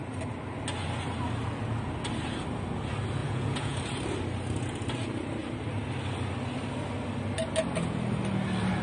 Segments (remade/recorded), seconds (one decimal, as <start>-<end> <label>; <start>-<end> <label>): 0.0-3.2 recorded; 3.2-3.8 remade; 3.8-8.8 recorded